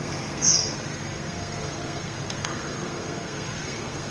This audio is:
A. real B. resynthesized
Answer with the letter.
B